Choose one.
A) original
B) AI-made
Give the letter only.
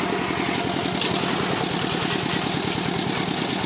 A